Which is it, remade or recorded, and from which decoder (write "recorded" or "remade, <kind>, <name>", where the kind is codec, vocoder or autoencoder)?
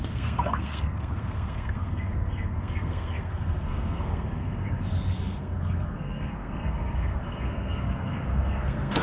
remade, codec, SNAC